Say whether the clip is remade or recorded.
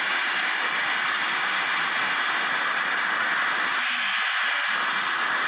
recorded